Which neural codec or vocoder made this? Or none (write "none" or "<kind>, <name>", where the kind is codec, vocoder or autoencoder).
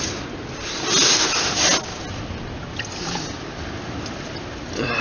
none